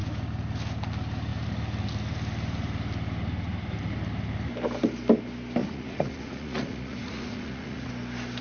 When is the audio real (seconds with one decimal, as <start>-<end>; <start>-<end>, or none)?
0.0-5.6; 7.9-8.4